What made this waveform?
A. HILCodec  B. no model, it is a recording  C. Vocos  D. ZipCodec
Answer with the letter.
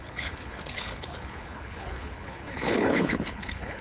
A